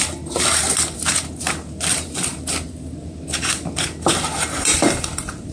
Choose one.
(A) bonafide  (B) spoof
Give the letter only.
B